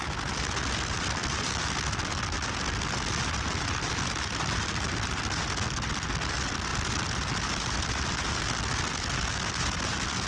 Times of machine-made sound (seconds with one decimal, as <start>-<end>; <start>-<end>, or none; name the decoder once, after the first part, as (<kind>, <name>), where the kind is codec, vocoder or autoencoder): none